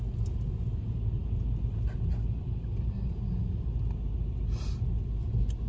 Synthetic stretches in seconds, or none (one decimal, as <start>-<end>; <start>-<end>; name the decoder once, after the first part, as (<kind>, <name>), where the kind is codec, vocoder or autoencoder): none